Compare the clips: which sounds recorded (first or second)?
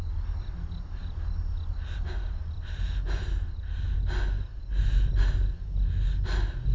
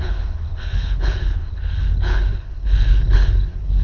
first